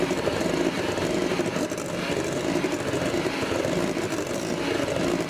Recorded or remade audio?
recorded